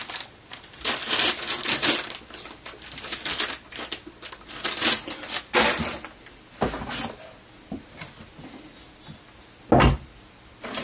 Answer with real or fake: real